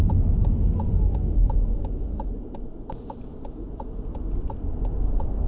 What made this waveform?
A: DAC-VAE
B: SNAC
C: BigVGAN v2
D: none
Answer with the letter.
D